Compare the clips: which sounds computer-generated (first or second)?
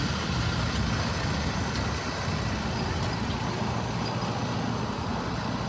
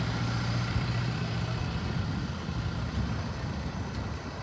second